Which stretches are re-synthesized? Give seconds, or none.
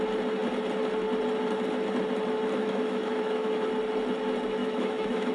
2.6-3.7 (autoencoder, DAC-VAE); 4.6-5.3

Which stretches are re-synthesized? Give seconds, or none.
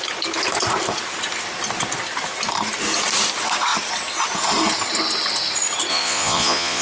5.9-6.8 (vocoder, Vocos)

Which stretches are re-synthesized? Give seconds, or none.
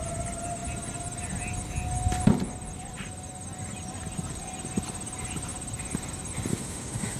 6.5-7.2 (autoencoder, DAC-VAE)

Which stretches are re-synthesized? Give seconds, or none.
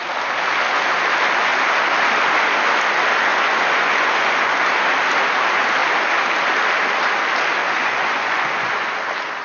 3.3-4.8 (vocoder, Vocos); 7.6-8.9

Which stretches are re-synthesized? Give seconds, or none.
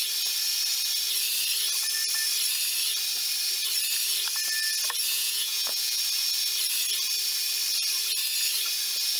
5.1-6.0 (vocoder, Vocos)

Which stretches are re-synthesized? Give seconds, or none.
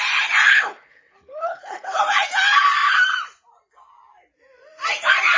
0.5-2.0 (codec, HILCodec)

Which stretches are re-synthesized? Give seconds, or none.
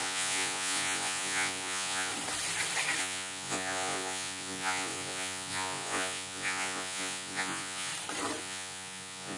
0.0-2.1 (vocoder, Vocos); 3.0-7.9; 8.4-9.4